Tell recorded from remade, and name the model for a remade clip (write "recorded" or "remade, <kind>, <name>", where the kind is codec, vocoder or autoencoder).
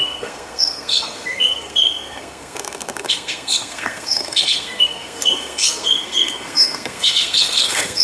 remade, codec, SNAC